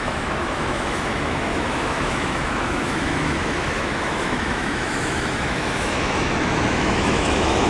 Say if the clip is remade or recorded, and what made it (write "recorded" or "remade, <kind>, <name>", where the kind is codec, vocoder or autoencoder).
remade, autoencoder, DAC-VAE